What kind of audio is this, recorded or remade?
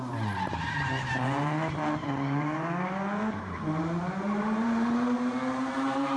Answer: remade